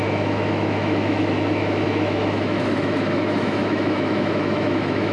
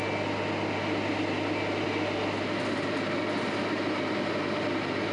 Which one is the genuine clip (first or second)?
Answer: second